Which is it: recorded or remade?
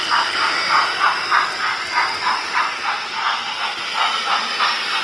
recorded